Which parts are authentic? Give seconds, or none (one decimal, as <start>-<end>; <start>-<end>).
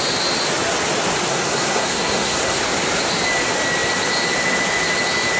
0.0-1.3; 2.6-5.4